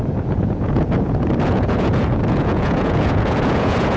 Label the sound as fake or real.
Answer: fake